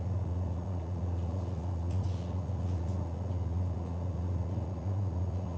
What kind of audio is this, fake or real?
fake